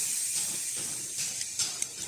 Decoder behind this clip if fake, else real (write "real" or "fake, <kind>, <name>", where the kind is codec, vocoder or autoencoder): real